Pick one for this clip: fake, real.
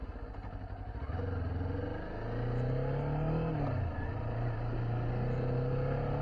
real